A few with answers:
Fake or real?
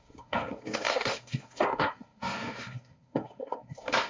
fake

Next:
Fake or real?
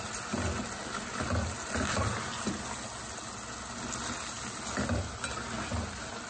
real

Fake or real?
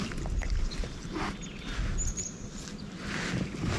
real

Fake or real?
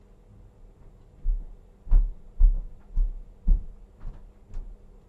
real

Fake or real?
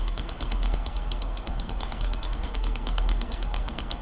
fake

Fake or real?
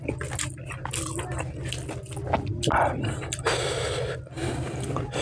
real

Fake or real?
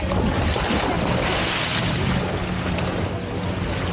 real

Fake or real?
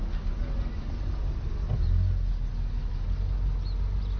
real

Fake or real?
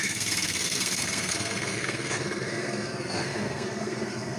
fake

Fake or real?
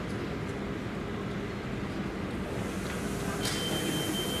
real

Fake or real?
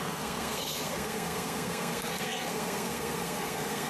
fake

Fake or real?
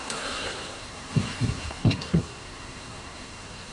fake